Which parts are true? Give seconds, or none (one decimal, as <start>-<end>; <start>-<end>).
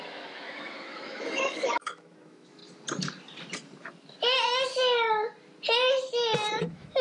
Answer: 2.6-6.6